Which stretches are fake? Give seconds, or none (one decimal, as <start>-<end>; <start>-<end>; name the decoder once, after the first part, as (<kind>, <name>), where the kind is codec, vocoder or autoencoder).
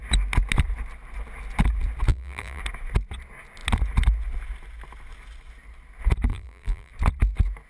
2.1-2.6 (vocoder, BigVGAN v2); 6.3-6.9